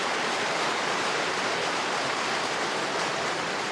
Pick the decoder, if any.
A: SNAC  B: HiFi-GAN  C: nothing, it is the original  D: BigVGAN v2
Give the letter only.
D